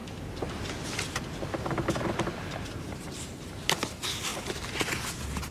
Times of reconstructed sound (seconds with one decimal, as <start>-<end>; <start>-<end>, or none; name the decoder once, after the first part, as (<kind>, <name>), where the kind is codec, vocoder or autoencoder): 0.0-0.6 (vocoder, BigVGAN v2); 2.3-3.9; 4.3-4.9